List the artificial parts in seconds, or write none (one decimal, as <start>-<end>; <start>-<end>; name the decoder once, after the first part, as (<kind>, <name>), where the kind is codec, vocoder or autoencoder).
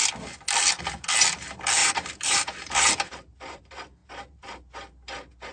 1.8-3.6 (vocoder, BigVGAN v2); 4.0-4.6